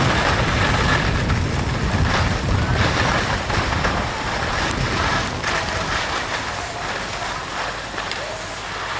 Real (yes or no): yes